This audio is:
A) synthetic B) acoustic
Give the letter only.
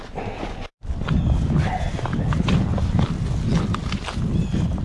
B